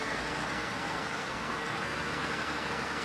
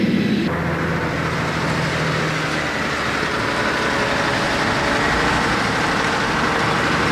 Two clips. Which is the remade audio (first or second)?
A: first